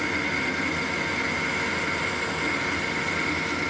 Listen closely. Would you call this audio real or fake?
real